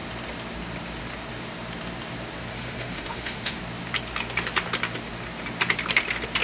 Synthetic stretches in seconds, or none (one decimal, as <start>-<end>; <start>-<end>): 2.5-3.6